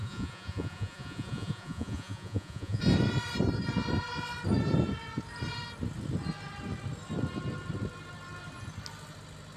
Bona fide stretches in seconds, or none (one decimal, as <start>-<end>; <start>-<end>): 2.8-9.6